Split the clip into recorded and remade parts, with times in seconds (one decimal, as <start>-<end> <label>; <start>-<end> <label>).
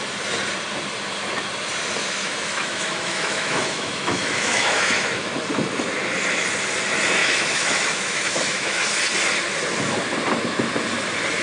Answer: 0.0-2.0 recorded; 2.0-5.3 remade; 5.3-7.2 recorded; 7.2-8.8 remade; 8.8-11.4 recorded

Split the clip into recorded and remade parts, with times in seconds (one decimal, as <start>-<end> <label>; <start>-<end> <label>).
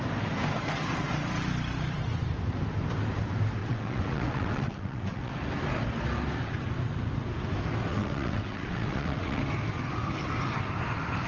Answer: 0.0-3.6 recorded; 3.6-5.3 remade; 5.3-7.9 recorded; 7.9-9.4 remade; 9.4-11.3 recorded